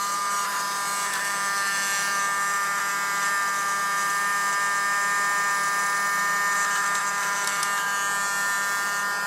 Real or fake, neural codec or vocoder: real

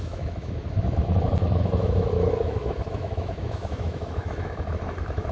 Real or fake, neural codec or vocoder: fake, autoencoder, DAC-VAE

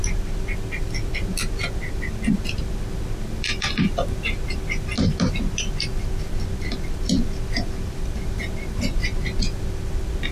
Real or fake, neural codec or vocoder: real